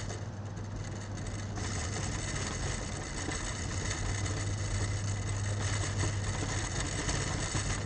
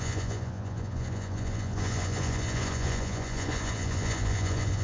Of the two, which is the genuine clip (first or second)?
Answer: first